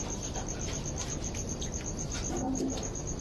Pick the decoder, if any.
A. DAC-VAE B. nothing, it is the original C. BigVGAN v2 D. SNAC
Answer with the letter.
B